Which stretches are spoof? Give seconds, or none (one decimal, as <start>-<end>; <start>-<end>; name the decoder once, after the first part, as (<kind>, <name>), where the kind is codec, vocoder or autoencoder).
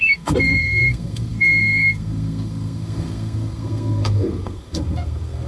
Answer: 0.0-5.5 (codec, SNAC)